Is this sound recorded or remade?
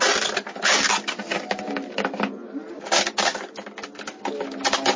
recorded